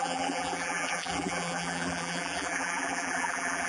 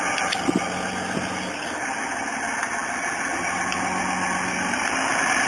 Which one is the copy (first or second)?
first